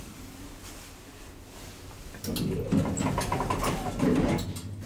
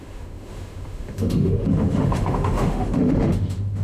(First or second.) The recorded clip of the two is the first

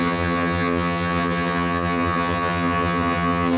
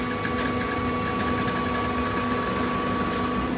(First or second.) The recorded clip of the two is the second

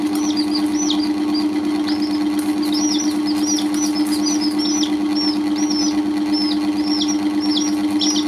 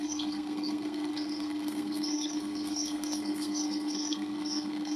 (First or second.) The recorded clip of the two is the first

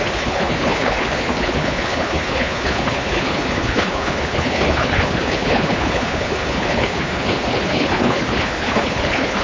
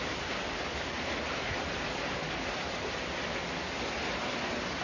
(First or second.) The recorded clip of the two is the second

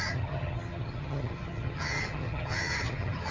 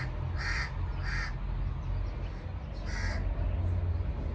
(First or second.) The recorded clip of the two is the second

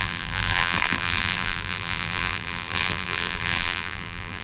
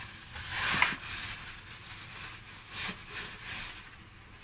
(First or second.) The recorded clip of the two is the second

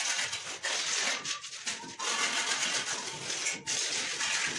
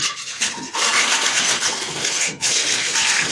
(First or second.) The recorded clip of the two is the first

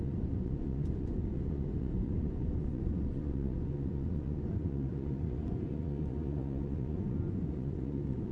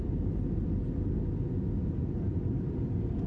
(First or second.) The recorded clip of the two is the second